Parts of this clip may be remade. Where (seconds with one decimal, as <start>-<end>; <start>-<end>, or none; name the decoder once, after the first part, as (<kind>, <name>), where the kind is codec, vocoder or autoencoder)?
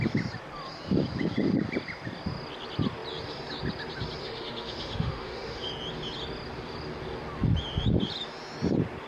4.2-5.7 (autoencoder, DAC-VAE)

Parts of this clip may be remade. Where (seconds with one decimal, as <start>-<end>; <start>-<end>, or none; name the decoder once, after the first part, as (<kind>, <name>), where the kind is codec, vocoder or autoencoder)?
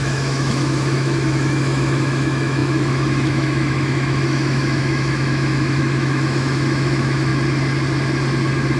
0.0-7.3 (autoencoder, DAC-VAE)